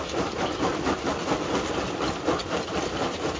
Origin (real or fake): real